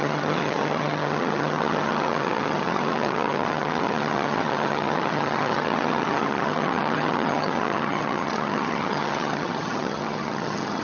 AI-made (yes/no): yes